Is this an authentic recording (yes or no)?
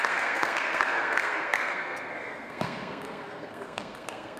no